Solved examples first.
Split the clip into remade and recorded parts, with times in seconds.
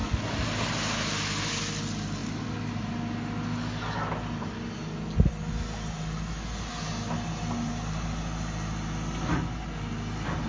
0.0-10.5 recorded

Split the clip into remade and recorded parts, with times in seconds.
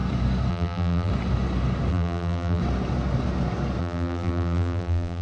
0.0-0.5 recorded; 0.5-1.1 remade; 1.1-1.9 recorded; 1.9-2.6 remade; 2.6-3.8 recorded; 3.8-5.2 remade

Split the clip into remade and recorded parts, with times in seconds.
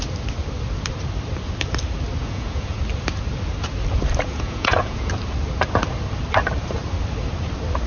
0.0-2.2 recorded; 2.2-2.8 remade; 2.8-4.3 recorded; 4.3-5.1 remade; 5.1-7.9 recorded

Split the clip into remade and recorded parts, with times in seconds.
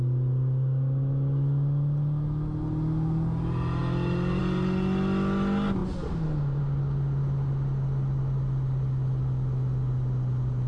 0.0-10.7 recorded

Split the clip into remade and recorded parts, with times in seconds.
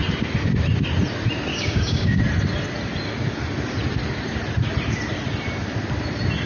0.0-1.5 recorded; 1.5-2.2 remade; 2.2-6.5 recorded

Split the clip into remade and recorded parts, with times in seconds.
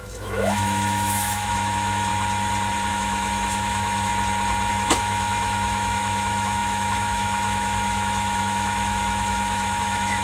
0.0-2.1 remade; 2.1-2.9 recorded; 2.9-4.1 remade; 4.1-4.7 recorded; 4.7-10.2 remade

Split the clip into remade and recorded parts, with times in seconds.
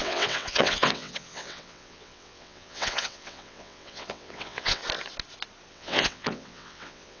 0.0-4.8 remade; 4.8-5.7 recorded; 5.7-7.2 remade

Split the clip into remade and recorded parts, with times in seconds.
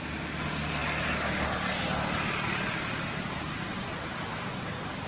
0.0-5.1 recorded